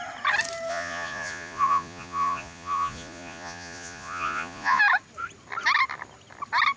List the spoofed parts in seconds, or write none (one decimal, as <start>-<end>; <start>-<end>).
0.7-4.8